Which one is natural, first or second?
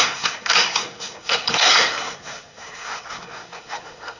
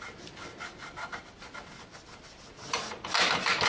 second